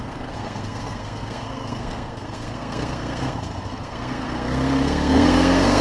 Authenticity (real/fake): fake